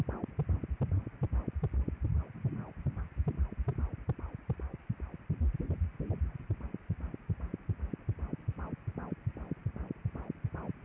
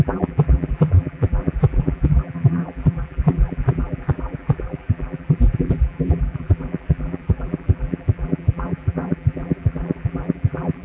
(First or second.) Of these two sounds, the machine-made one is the second